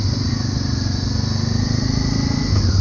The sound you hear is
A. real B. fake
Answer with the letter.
A